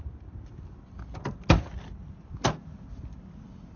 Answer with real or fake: real